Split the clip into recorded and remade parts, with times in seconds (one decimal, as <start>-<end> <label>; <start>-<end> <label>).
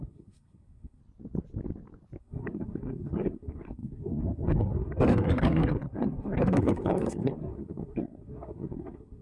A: 0.0-1.0 remade; 1.0-2.2 recorded; 2.2-9.2 remade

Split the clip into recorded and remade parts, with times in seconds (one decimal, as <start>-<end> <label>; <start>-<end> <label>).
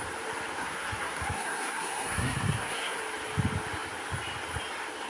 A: 0.0-0.6 recorded; 0.6-3.0 remade; 3.0-5.1 recorded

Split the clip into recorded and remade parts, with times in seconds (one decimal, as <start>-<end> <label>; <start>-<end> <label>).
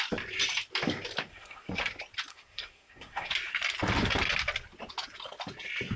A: 0.0-1.3 recorded; 1.3-1.8 remade; 1.8-2.3 recorded; 2.3-3.3 remade; 3.3-6.0 recorded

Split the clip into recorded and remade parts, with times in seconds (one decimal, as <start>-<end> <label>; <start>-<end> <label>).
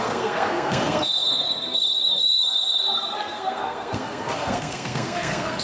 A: 0.0-5.6 remade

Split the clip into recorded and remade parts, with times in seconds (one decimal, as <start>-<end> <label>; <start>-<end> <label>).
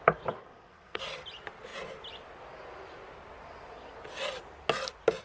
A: 0.0-0.4 recorded; 0.4-1.0 remade; 1.0-5.2 recorded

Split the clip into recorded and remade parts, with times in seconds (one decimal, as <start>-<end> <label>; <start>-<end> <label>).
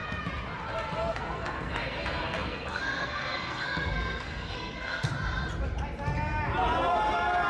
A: 0.0-1.0 recorded; 1.0-5.1 remade; 5.1-7.5 recorded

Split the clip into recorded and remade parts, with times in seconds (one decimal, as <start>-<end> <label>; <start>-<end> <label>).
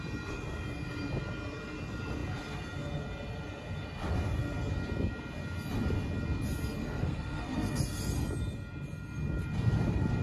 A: 0.0-6.8 recorded; 6.8-7.8 remade; 7.8-10.2 recorded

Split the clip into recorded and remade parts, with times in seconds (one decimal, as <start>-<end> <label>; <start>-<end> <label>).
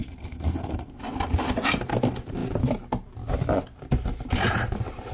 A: 0.0-1.0 remade; 1.0-5.1 recorded